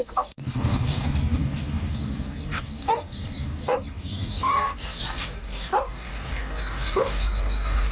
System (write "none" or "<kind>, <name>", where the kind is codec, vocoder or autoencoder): codec, DAC